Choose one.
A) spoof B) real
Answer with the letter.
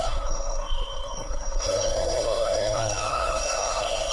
A